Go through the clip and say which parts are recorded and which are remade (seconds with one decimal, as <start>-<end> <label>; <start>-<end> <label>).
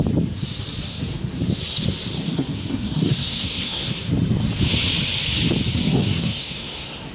0.0-0.9 recorded; 0.9-1.4 remade; 1.4-2.1 recorded; 2.1-3.9 remade; 3.9-5.7 recorded; 5.7-7.1 remade